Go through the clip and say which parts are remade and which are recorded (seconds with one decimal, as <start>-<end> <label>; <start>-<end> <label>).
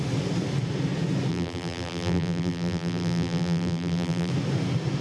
0.0-1.3 recorded; 1.3-4.3 remade; 4.3-5.0 recorded